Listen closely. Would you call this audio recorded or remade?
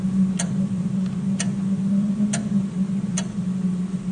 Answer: recorded